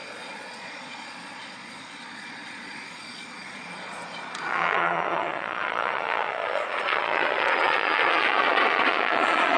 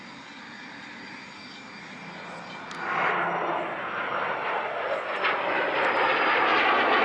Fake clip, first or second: first